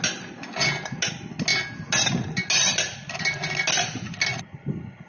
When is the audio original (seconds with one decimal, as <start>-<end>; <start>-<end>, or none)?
0.0-5.1